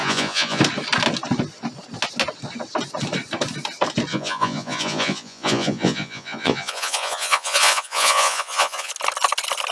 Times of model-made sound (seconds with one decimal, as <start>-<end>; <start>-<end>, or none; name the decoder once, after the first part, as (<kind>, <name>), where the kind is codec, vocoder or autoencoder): 0.0-0.6 (vocoder, Vocos); 4.1-8.9